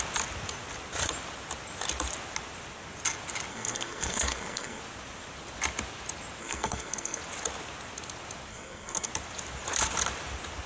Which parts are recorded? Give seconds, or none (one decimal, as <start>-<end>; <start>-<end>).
0.0-3.5; 4.8-6.4; 7.2-8.5; 9.1-10.7